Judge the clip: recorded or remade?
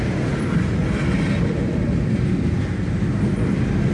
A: recorded